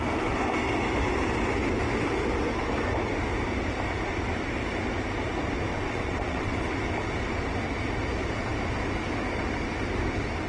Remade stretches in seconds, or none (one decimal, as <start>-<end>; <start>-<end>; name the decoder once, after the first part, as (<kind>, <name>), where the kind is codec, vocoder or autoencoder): 5.7-6.7 (vocoder, WaveNeXt)